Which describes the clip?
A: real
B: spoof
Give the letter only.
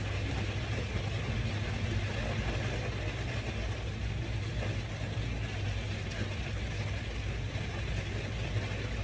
A